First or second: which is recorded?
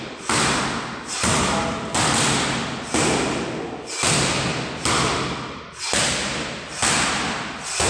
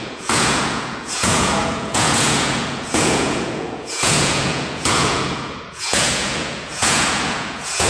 first